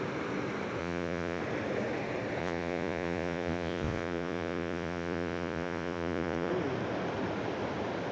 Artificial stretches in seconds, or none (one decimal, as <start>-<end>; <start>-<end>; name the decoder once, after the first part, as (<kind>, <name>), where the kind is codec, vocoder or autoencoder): 0.8-1.4 (vocoder, Vocos); 2.4-6.5

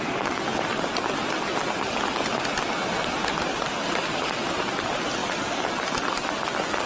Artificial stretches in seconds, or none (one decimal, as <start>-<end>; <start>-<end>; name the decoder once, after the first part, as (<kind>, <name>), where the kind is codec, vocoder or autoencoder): none

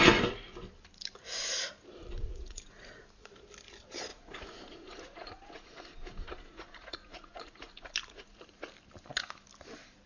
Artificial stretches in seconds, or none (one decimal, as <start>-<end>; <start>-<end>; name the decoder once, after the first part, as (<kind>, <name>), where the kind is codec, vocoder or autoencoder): 2.2-2.9 (vocoder, Vocos); 4.1-8.4

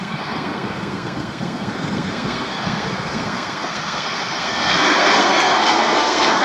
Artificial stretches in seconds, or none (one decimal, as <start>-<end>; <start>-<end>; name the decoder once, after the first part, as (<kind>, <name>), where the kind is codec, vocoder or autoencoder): 0.0-6.4 (codec, SNAC)

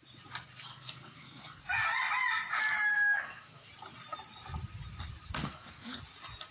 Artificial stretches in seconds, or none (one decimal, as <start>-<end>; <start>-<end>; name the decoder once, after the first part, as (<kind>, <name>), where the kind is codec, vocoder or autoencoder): 0.7-1.6 (codec, SNAC); 2.9-3.7; 5.4-6.0

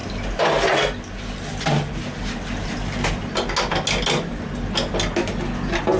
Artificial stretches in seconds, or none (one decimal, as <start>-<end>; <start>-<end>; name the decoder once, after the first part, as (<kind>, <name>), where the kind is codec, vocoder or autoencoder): none

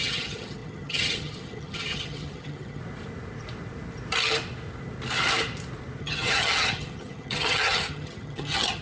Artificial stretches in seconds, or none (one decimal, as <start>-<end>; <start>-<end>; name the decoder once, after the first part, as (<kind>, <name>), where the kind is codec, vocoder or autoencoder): 0.0-2.8 (vocoder, HiFi-GAN); 6.0-8.8

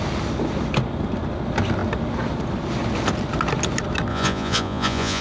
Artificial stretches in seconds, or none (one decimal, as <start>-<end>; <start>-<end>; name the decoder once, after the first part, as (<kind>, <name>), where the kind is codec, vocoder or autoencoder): 4.1-5.2 (vocoder, Vocos)